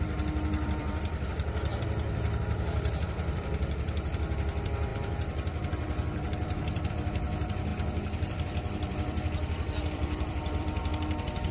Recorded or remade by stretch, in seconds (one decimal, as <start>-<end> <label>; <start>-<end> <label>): 0.0-11.5 remade